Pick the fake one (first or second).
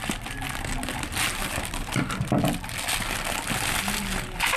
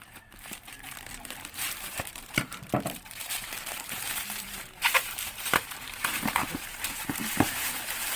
second